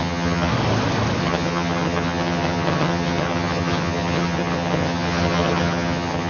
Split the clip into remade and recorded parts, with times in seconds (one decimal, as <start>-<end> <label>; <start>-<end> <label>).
0.0-0.5 remade; 0.5-1.2 recorded; 1.2-6.3 remade